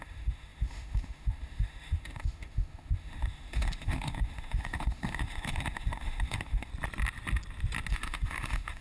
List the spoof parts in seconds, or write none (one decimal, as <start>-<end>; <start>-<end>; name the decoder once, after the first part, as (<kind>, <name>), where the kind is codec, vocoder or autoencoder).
0.0-6.7 (autoencoder, DAC-VAE); 7.9-8.8